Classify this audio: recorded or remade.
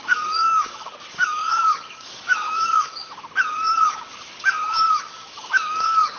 remade